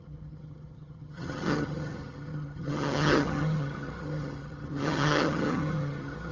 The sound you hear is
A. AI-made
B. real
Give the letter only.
A